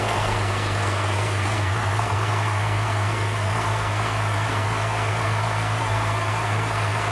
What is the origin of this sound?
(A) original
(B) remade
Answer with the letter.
B